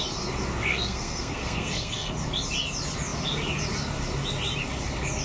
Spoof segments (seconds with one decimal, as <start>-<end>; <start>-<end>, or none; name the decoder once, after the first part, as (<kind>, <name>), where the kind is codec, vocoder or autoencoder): 0.7-2.1 (codec, SNAC)